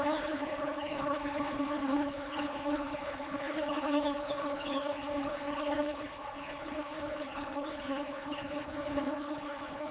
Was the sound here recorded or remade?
remade